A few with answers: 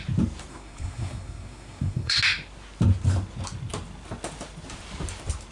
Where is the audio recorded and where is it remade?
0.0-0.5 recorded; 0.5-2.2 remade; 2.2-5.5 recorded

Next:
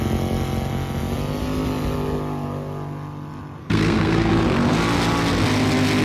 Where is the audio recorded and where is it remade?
0.0-3.6 recorded; 3.6-4.3 remade; 4.3-6.0 recorded

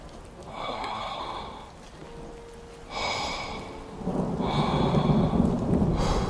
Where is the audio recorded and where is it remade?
0.0-0.5 recorded; 0.5-1.2 remade; 1.2-6.3 recorded

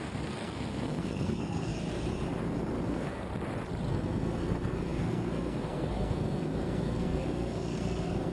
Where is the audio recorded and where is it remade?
0.0-1.7 remade; 1.7-2.9 recorded; 2.9-3.3 remade; 3.3-3.9 recorded; 3.9-8.3 remade

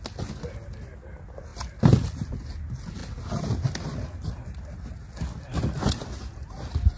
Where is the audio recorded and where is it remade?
0.0-7.0 recorded